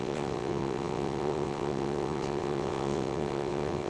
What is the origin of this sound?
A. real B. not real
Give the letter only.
B